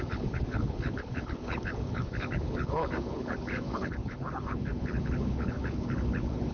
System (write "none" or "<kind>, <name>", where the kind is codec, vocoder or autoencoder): codec, HILCodec